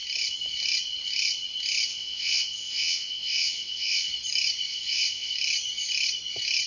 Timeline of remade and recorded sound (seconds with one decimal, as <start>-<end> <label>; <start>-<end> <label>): 0.0-1.9 recorded; 1.9-4.1 remade; 4.1-4.7 recorded; 4.7-5.3 remade; 5.3-6.7 recorded